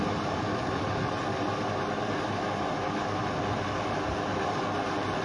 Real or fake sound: real